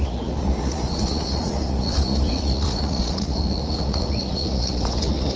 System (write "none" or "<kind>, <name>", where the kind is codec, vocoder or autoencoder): vocoder, Vocos